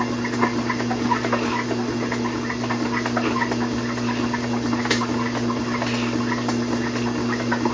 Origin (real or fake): real